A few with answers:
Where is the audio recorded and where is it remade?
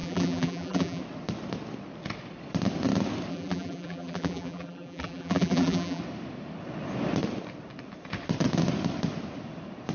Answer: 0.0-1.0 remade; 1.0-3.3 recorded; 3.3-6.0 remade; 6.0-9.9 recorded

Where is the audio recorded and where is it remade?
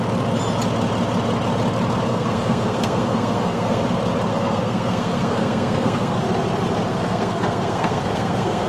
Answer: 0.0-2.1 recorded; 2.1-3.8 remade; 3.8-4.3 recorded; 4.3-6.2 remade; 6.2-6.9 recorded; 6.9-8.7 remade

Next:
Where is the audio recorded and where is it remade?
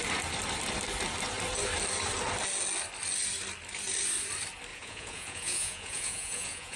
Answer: 0.0-4.7 recorded; 4.7-6.8 remade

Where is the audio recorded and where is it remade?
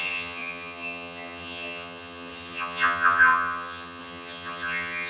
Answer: 0.0-5.1 remade